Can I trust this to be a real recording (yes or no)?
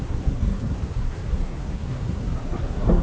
no